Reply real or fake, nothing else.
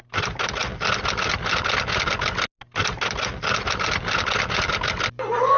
real